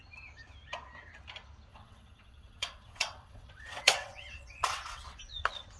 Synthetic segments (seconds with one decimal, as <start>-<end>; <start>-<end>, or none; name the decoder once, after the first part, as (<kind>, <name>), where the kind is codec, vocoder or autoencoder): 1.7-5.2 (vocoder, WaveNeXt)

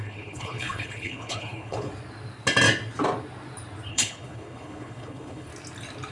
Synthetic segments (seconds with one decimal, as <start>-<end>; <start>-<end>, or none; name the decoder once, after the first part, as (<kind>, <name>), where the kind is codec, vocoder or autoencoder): 0.0-1.9 (codec, HILCodec); 3.9-5.5

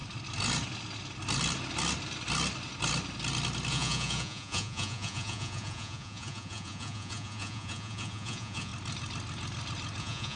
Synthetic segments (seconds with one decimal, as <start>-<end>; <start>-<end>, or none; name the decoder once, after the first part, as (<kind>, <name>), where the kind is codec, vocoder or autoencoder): 3.7-8.7 (vocoder, Vocos); 10.0-10.4

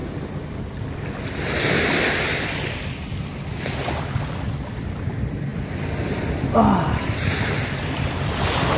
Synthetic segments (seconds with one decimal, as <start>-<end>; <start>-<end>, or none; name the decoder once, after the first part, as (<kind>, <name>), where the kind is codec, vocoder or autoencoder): none